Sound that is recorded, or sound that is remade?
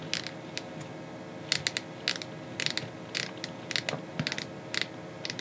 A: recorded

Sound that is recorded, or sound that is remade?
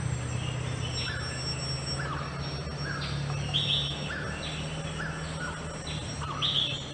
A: recorded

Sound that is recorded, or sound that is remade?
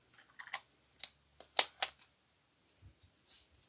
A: recorded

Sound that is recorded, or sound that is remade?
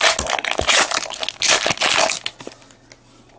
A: recorded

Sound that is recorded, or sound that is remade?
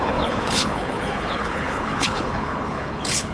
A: remade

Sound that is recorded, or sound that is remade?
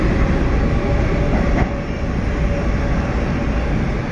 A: recorded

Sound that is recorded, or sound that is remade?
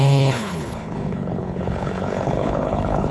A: remade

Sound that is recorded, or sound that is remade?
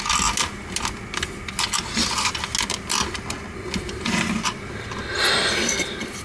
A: recorded